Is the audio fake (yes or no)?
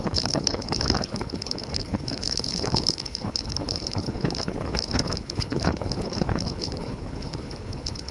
yes